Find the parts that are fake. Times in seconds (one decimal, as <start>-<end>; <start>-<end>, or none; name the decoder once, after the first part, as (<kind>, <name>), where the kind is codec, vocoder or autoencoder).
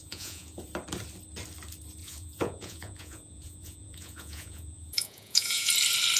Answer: 0.0-0.6 (vocoder, Vocos); 2.0-5.7